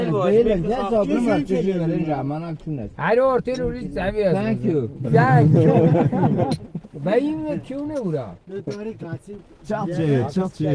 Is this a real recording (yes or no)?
yes